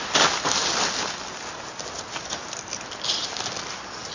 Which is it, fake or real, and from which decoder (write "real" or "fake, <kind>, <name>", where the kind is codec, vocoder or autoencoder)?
real